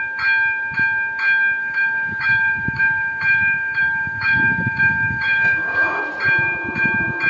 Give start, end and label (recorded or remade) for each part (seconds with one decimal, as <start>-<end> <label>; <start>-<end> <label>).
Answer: 0.0-1.6 recorded; 1.6-6.0 remade; 6.0-7.3 recorded